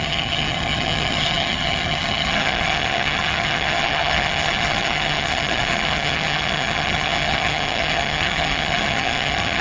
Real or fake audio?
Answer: fake